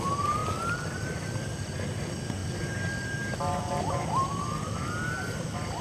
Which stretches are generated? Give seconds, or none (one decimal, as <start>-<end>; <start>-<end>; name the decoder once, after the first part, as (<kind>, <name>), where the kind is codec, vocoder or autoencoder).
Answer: 0.4-2.0 (vocoder, BigVGAN v2); 2.4-5.8